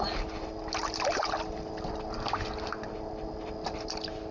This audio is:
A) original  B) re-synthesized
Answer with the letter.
A